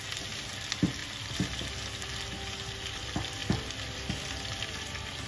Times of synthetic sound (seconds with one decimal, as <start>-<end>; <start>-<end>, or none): none